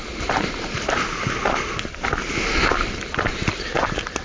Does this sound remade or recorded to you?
recorded